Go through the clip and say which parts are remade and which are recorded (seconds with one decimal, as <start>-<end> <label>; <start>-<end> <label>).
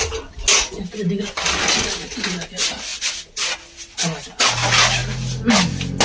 0.0-6.0 recorded